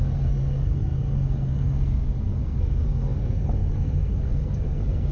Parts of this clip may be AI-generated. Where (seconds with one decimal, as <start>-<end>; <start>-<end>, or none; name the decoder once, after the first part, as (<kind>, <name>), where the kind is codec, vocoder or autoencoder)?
0.0-5.1 (codec, SNAC)